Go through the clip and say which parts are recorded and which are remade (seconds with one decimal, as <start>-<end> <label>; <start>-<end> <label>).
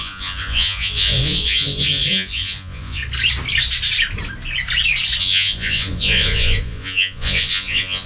0.0-3.0 remade; 3.0-5.2 recorded; 5.2-8.1 remade